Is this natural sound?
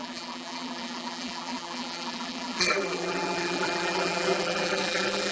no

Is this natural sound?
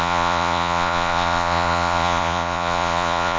no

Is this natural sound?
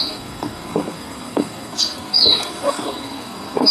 no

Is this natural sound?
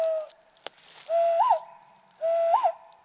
yes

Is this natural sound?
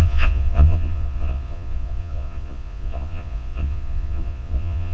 no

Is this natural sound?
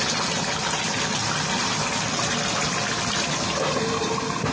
yes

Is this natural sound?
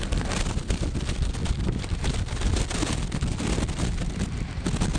yes